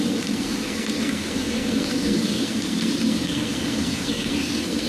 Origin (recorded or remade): remade